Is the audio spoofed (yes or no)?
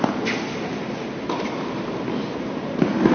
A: no